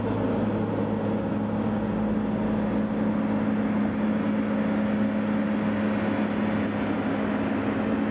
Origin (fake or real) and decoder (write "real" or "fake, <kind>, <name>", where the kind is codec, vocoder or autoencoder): real